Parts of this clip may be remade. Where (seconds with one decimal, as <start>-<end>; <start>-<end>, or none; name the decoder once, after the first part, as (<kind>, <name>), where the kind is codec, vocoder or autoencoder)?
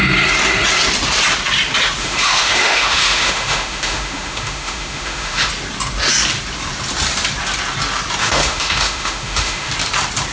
2.0-5.5 (autoencoder, DAC-VAE); 8.2-9.7